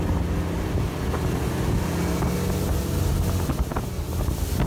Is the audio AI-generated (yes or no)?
no